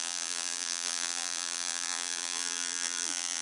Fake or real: fake